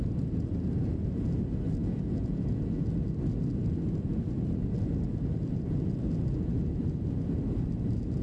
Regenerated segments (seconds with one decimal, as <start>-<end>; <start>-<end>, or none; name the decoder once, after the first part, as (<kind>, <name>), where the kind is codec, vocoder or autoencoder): 1.8-2.6 (vocoder, Vocos)